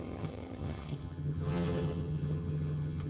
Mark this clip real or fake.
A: fake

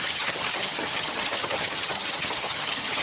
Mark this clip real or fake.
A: fake